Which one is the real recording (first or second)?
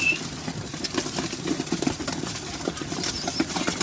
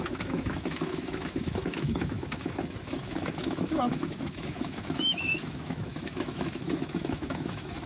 first